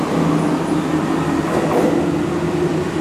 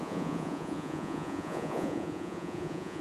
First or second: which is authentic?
first